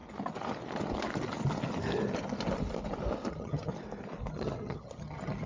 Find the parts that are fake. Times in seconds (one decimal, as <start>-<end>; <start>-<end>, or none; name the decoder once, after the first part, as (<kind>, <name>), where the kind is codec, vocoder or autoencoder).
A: 3.3-3.7 (vocoder, HiFi-GAN); 4.3-5.5